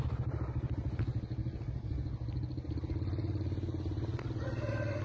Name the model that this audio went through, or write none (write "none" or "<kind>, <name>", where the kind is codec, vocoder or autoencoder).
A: none